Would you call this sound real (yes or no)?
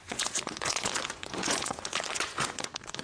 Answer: no